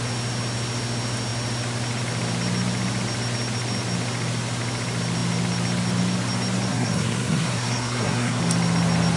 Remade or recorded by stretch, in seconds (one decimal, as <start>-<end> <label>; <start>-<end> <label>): 0.0-6.7 recorded; 6.7-8.4 remade; 8.4-9.2 recorded